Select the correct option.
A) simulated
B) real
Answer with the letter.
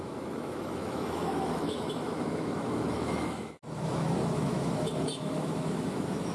A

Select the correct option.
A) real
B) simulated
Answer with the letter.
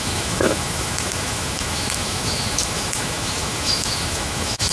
B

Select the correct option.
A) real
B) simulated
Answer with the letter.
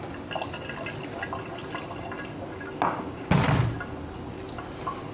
A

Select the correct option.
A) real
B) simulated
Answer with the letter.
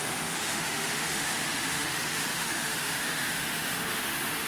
B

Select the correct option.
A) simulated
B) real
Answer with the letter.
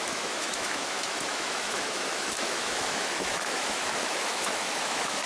A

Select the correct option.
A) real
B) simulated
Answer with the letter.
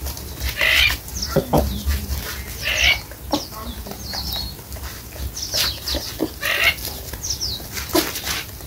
A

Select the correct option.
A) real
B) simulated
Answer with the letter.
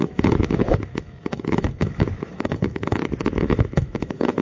B